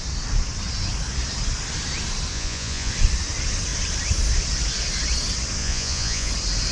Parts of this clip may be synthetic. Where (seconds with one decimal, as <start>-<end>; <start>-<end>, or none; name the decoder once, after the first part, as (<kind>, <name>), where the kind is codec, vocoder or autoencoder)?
2.3-2.9 (vocoder, Vocos); 5.6-6.3